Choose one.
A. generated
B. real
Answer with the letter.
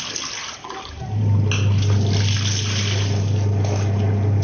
B